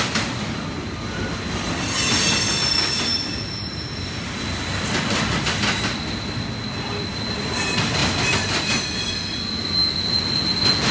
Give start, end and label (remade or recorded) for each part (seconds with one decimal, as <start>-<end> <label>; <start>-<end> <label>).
0.0-10.9 recorded